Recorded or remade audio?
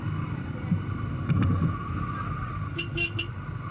recorded